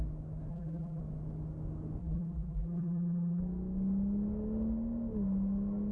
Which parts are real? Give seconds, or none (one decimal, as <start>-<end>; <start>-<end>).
0.0-0.5; 1.0-2.0; 3.4-5.9